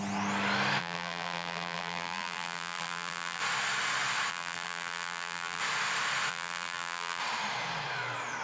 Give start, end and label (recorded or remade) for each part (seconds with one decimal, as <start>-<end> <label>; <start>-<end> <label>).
0.0-0.8 recorded; 0.8-3.4 remade; 3.4-4.3 recorded; 4.3-5.6 remade; 5.6-6.3 recorded; 6.3-7.2 remade; 7.2-8.4 recorded